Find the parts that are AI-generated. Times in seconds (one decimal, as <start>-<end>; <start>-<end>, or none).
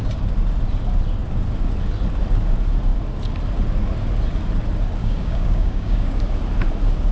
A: 5.0-6.2